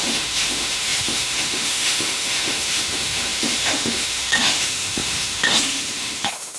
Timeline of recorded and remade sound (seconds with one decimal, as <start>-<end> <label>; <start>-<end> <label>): 0.0-6.6 remade